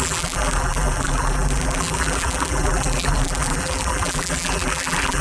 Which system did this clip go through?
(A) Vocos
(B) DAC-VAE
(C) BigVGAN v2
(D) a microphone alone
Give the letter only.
C